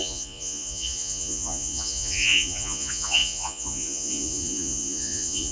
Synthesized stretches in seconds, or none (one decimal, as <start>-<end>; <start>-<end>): 0.0-5.5